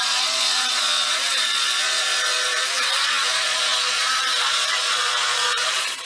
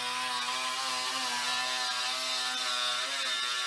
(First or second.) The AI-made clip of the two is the first